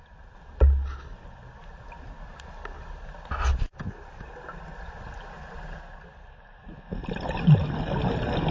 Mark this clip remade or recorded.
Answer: recorded